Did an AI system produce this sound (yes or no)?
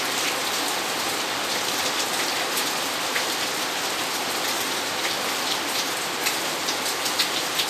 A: no